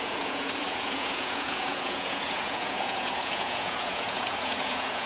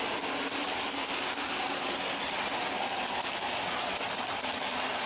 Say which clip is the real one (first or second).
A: second